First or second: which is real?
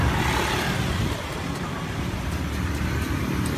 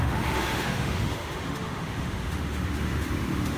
first